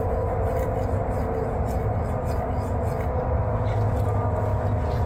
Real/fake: real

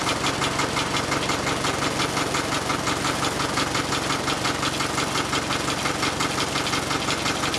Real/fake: real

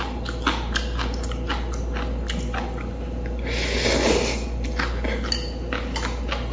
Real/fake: real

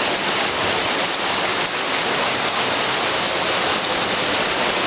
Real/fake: real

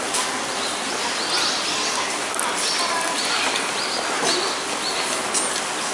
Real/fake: real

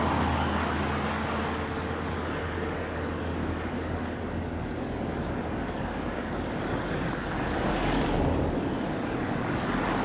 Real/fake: fake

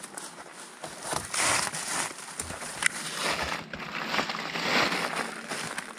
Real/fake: real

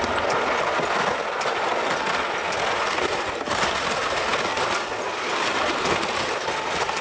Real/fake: real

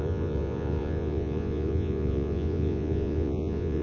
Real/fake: fake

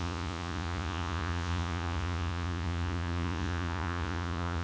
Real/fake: fake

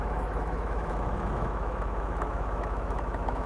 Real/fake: fake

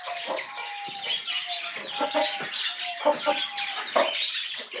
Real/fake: real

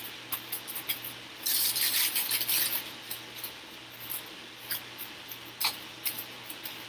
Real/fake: real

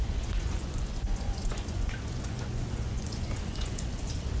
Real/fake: fake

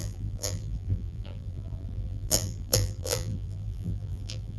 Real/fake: fake